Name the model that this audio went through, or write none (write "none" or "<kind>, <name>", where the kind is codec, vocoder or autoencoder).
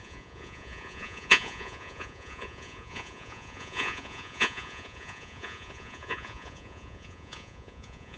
vocoder, Vocos